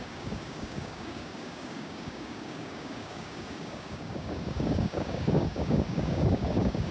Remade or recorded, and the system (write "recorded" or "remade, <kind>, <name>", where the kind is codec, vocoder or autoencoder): remade, codec, DAC